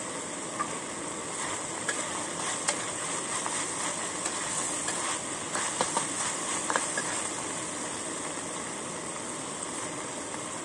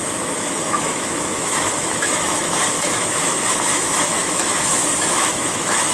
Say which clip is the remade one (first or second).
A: second